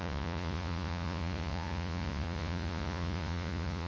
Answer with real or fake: fake